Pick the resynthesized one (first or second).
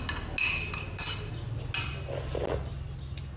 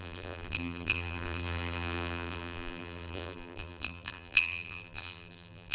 second